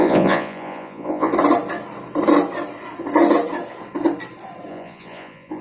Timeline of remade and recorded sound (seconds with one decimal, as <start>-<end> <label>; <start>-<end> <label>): 0.0-1.3 remade; 1.3-4.7 recorded; 4.7-5.6 remade